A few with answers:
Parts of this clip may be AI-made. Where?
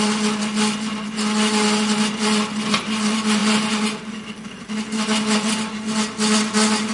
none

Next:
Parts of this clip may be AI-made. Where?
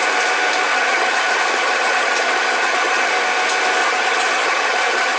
0.7-3.1 (vocoder, HiFi-GAN); 3.8-5.2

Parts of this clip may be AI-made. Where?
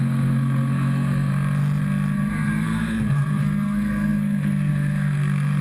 0.0-1.3 (codec, SNAC); 2.3-5.6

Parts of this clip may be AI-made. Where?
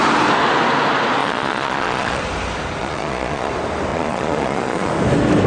1.2-2.2 (vocoder, Vocos); 2.8-3.5; 3.9-4.9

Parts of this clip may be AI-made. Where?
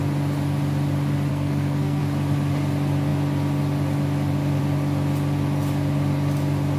1.3-2.0 (codec, SNAC)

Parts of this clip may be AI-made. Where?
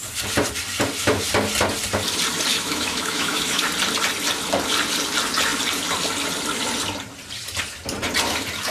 2.5-3.6 (autoencoder, DAC-VAE)